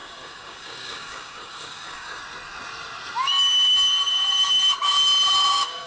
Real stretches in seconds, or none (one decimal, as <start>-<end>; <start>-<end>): 2.2-5.5